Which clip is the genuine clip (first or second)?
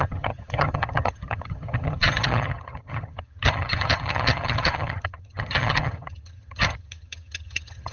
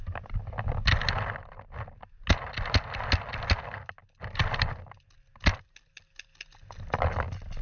second